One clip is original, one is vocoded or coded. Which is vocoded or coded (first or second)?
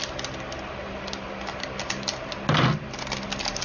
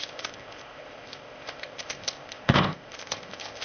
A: second